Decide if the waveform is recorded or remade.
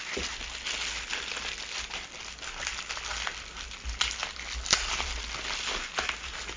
recorded